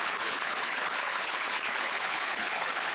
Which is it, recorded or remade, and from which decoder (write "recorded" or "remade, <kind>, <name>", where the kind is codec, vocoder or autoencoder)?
remade, codec, HILCodec